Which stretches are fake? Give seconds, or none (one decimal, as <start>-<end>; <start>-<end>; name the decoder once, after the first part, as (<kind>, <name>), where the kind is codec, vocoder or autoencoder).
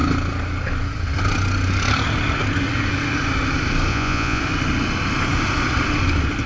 3.9-4.4 (vocoder, Vocos)